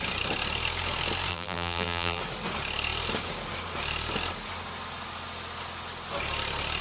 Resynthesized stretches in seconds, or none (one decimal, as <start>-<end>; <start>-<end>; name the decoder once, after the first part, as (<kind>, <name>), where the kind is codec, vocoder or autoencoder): 1.3-2.2 (vocoder, BigVGAN v2)